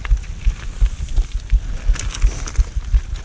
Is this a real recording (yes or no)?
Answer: yes